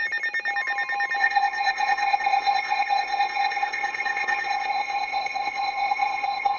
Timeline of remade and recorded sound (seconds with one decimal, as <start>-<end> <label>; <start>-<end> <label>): 0.0-1.2 recorded; 1.2-6.6 remade